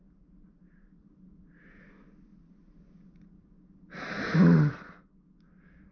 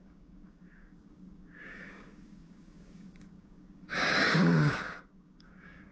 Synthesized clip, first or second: second